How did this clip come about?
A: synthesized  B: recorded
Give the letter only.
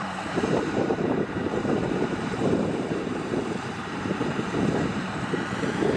A